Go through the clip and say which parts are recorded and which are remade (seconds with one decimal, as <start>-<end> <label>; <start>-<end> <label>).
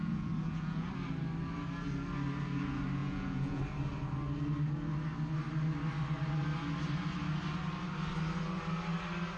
0.0-0.9 remade; 0.9-3.0 recorded; 3.0-3.6 remade; 3.6-9.4 recorded